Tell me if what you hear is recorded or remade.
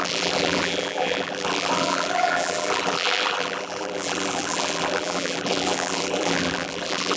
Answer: remade